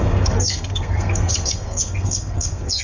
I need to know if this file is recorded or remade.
remade